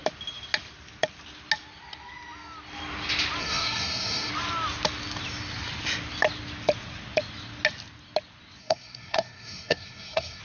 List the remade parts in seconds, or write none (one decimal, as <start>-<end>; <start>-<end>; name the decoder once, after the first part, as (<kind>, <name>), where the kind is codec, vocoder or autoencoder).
3.4-4.3 (codec, SNAC); 8.6-10.4